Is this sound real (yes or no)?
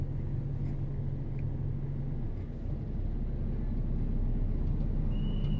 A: yes